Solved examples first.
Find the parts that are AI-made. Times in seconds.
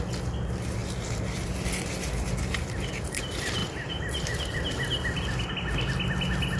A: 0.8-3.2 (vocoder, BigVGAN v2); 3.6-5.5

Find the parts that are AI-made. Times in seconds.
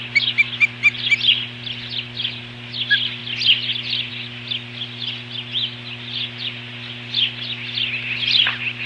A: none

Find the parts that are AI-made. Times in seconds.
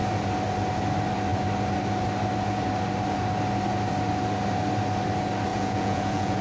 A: 5.5-6.4 (vocoder, Vocos)